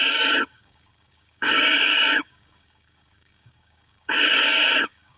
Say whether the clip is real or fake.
fake